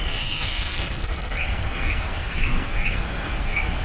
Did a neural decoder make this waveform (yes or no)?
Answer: yes